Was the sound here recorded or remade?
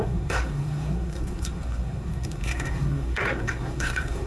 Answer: remade